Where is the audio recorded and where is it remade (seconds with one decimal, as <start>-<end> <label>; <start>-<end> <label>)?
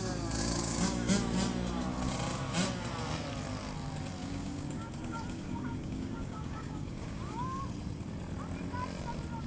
0.0-0.4 recorded; 0.4-1.1 remade; 1.1-4.2 recorded; 4.2-7.6 remade; 7.6-9.5 recorded